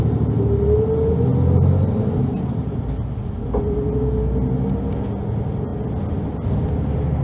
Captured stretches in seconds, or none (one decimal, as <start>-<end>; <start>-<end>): 0.0-7.2